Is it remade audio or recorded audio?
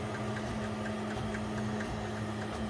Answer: recorded